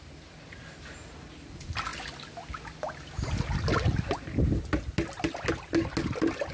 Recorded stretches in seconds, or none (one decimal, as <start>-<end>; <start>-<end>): 0.0-6.5